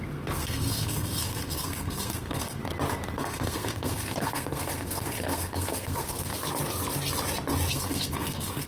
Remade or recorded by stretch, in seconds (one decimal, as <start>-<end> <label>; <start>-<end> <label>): 0.0-2.6 remade; 2.6-3.2 recorded; 3.2-6.3 remade; 6.3-7.7 recorded; 7.7-8.7 remade